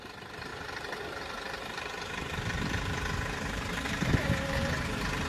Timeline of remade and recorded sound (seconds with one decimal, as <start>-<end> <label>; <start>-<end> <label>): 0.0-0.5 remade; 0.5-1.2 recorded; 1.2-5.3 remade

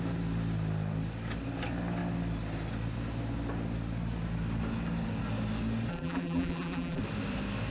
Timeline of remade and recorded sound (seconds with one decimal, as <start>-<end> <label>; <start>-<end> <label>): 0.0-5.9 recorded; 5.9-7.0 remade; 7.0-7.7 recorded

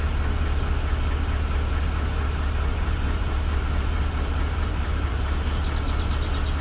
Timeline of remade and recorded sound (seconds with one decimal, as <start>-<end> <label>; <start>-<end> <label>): 0.0-2.7 recorded; 2.7-5.6 remade; 5.6-6.6 recorded

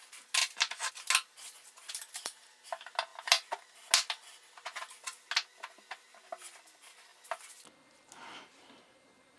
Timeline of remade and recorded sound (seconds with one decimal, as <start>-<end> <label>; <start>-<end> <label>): 0.0-9.4 recorded

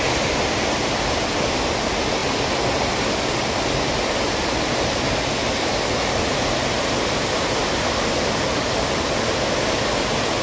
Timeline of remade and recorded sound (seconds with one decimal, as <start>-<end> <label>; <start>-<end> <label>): 0.0-10.4 recorded

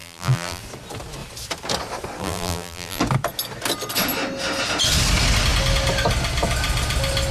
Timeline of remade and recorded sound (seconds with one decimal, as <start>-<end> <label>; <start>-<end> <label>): 0.0-0.6 remade; 0.6-2.2 recorded; 2.2-3.0 remade; 3.0-7.3 recorded

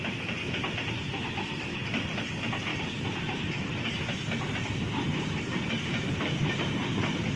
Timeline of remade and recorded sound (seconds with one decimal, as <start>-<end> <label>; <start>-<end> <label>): 0.0-2.7 recorded; 2.7-4.3 remade; 4.3-7.4 recorded